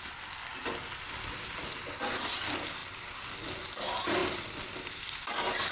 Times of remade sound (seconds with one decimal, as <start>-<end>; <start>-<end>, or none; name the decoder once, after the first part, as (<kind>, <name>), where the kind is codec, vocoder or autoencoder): 0.5-2.0 (vocoder, BigVGAN v2); 2.8-3.5; 4.2-5.7